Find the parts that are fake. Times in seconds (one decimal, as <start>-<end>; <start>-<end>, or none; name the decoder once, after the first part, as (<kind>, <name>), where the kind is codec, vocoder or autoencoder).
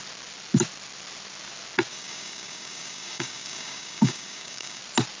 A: 1.9-4.8 (codec, DAC)